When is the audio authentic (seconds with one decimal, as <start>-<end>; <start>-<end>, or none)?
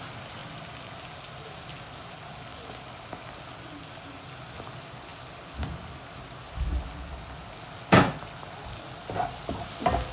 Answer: 0.0-10.1